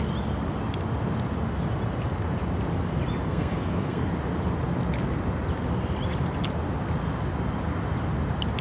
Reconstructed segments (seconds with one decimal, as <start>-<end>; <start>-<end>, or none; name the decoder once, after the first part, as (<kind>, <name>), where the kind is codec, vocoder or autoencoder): 3.3-4.1 (codec, SNAC)